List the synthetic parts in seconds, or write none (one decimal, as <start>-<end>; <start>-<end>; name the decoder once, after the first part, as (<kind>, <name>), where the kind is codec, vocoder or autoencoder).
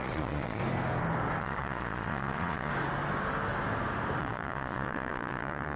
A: 0.0-0.6 (vocoder, Vocos); 1.4-2.7; 4.2-5.8